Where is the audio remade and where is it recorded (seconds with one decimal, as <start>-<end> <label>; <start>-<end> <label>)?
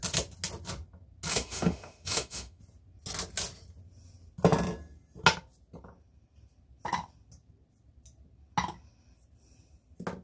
0.0-1.3 recorded; 1.3-2.6 remade; 2.6-10.2 recorded